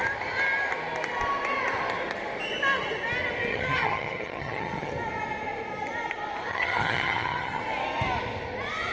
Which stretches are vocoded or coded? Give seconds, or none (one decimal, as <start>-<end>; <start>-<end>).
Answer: 3.5-4.9; 6.5-7.6